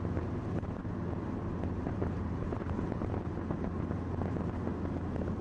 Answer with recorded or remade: recorded